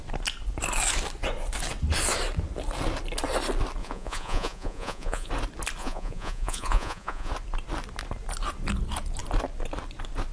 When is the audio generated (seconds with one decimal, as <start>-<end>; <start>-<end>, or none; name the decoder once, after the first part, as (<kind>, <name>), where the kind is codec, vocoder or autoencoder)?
3.8-5.3 (vocoder, Vocos); 5.8-7.3